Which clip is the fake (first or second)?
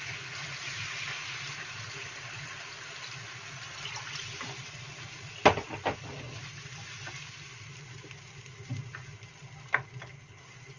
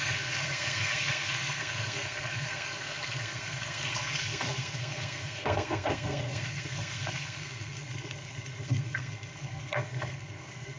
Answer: second